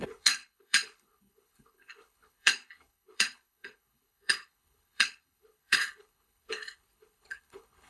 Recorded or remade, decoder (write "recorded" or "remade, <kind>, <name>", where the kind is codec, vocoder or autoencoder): remade, codec, HILCodec